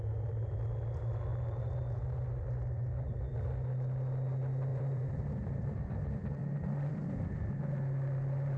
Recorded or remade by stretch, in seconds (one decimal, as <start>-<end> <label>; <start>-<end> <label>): 0.0-1.3 recorded; 1.3-2.0 remade; 2.0-4.7 recorded; 4.7-6.0 remade; 6.0-8.6 recorded